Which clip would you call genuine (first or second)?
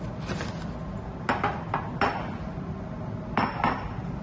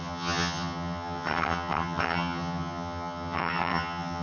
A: first